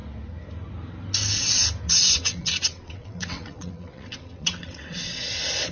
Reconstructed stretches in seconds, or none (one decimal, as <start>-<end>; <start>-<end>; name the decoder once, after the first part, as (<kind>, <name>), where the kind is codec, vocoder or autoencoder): 1.9-5.3 (vocoder, WaveNeXt)